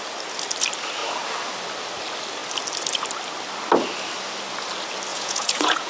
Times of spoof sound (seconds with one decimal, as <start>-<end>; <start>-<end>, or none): 5.1-5.9